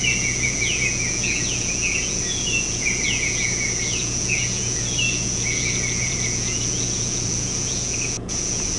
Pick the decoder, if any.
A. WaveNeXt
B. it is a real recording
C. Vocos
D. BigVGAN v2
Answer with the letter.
C